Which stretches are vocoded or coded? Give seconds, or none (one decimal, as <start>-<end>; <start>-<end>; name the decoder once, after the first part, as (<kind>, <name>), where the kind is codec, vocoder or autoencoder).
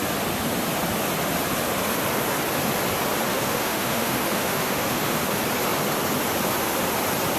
3.3-5.3 (autoencoder, DAC-VAE)